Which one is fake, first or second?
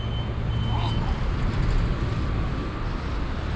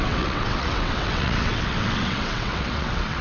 second